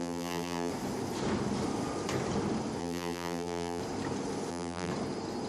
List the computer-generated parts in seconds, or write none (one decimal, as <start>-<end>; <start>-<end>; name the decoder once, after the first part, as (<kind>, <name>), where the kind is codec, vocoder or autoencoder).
0.0-0.7 (vocoder, BigVGAN v2); 2.8-3.8; 4.5-4.9